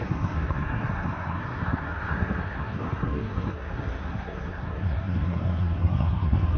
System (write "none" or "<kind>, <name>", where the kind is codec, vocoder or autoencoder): codec, SNAC